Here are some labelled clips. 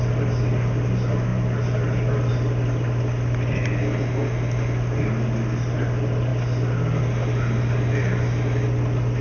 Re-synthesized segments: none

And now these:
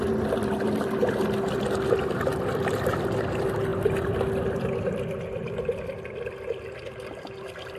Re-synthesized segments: none

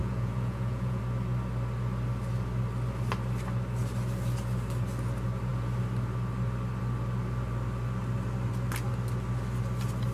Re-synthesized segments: 0.0-1.0 (vocoder, Vocos)

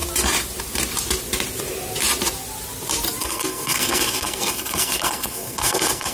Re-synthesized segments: 3.2-6.1 (codec, SNAC)

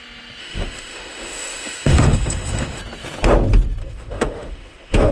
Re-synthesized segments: 0.4-2.8 (autoencoder, DAC-VAE); 3.8-5.1

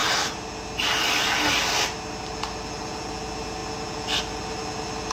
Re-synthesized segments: none

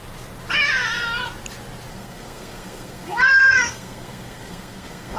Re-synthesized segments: 1.9-5.2 (codec, SNAC)